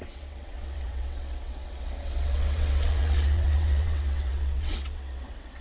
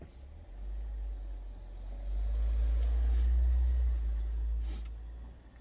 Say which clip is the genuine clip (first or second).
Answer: second